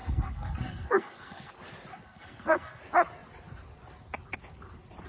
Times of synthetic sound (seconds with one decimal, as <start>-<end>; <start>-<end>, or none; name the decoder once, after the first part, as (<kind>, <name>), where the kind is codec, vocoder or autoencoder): 0.0-1.5 (codec, SNAC); 1.9-2.8

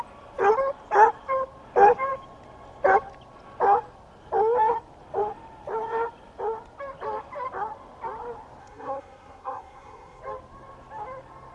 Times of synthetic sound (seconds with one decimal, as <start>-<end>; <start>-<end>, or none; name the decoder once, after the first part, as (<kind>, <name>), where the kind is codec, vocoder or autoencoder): 8.6-10.2 (codec, SNAC)

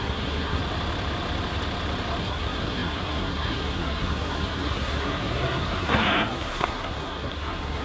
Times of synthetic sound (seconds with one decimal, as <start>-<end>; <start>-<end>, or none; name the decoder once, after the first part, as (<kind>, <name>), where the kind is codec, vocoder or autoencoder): 0.0-0.6 (codec, SNAC); 2.2-7.8

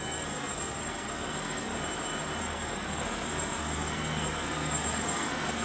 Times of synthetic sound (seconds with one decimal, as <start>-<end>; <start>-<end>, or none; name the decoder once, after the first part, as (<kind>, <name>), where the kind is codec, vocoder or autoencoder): 0.0-1.7 (codec, SNAC); 2.4-5.6